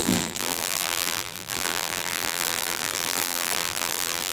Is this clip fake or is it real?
fake